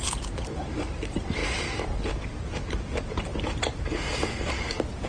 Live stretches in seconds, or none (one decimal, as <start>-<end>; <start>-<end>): 1.4-1.9